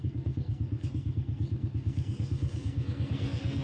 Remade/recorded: remade